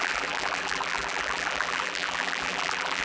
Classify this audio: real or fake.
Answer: fake